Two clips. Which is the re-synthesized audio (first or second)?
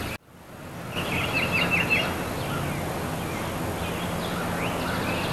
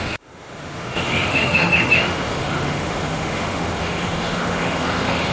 second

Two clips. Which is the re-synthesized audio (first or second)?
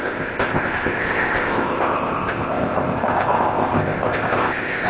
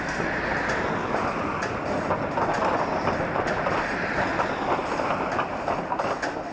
first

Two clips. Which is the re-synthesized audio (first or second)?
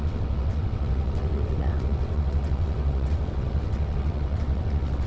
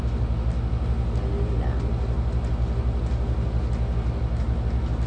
first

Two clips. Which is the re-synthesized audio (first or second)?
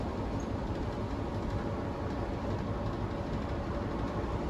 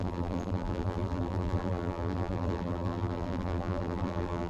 second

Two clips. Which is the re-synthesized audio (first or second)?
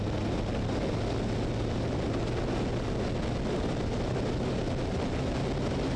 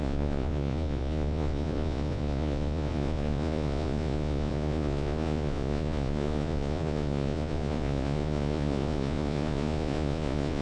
second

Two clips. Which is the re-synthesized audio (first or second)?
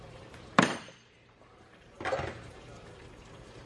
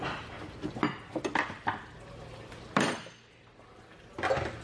first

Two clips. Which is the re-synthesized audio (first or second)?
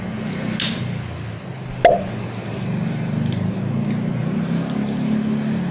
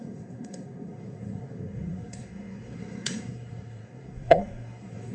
second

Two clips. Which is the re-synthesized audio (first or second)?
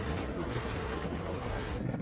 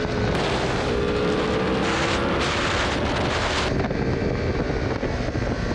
first